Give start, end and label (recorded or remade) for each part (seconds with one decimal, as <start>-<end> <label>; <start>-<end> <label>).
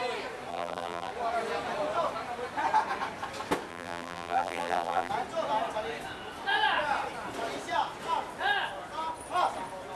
0.0-0.5 recorded; 0.5-1.1 remade; 1.1-3.7 recorded; 3.7-5.1 remade; 5.1-10.0 recorded